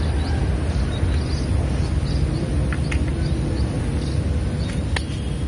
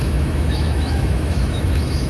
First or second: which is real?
first